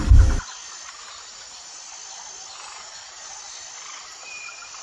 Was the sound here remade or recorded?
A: recorded